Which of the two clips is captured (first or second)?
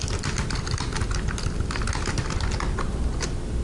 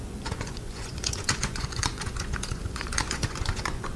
first